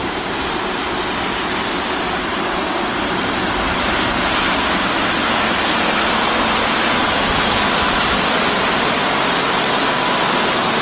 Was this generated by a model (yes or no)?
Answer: no